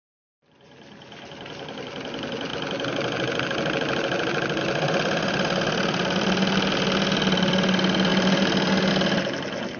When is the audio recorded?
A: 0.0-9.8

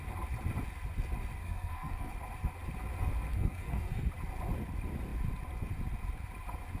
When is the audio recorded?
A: 0.0-1.4; 2.1-3.3; 4.1-6.8

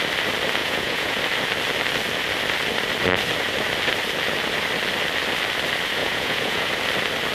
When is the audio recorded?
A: 0.0-0.6; 1.2-6.0; 6.7-7.3

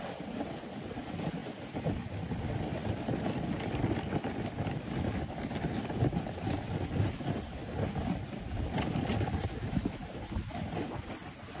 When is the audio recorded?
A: 0.0-11.6

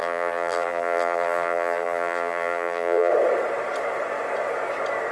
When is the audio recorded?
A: 3.1-5.1

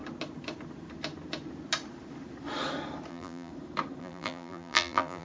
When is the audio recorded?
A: 0.0-3.1; 3.5-4.0

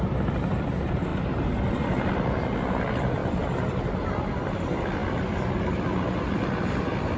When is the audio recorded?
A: 1.1-2.1; 3.2-4.1; 5.0-6.2